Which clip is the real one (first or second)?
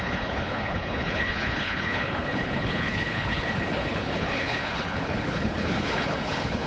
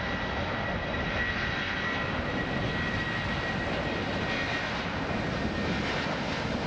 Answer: second